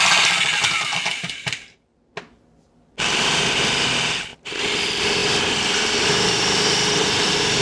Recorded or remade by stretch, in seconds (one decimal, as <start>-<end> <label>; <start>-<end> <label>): 0.0-5.2 recorded; 5.2-7.6 remade